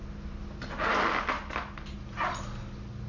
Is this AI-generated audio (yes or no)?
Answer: no